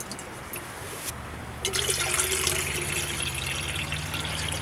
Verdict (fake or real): real